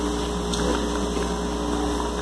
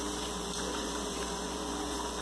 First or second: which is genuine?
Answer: first